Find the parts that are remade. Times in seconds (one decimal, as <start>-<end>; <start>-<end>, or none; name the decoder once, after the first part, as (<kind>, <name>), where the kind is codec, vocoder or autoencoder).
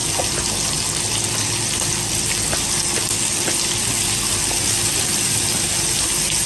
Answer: none